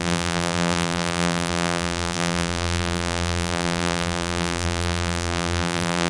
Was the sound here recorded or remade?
remade